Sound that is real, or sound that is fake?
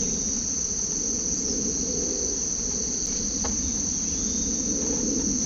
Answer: real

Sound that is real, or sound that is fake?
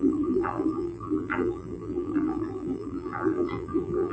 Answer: fake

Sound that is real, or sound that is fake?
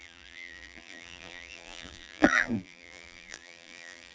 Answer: fake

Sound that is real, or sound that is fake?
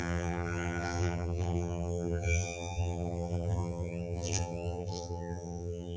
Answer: fake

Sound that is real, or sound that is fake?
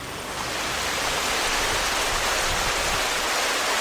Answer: real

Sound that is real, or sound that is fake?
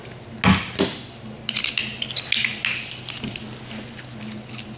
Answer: real